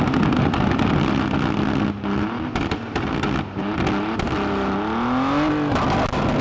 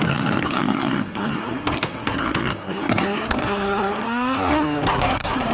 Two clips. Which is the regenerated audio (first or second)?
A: second